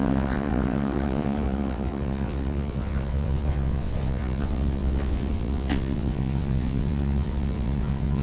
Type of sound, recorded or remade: remade